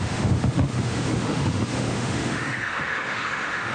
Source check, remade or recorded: remade